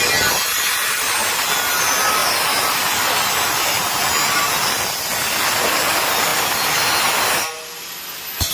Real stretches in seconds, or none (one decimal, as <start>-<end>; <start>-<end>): 0.0-2.2; 3.8-8.5